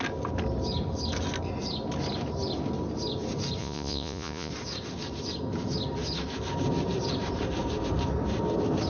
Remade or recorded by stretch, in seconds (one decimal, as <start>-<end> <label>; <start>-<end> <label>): 0.0-3.6 recorded; 3.6-4.5 remade; 4.5-8.9 recorded